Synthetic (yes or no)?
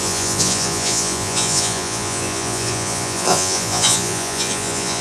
yes